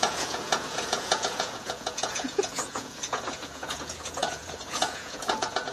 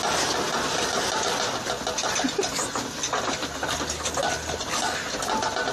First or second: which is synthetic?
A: first